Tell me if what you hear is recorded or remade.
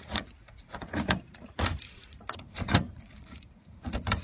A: remade